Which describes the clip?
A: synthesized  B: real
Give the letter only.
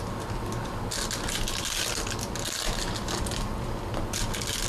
B